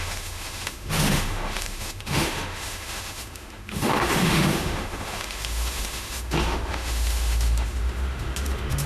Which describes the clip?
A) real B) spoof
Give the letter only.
B